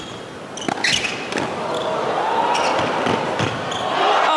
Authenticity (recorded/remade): recorded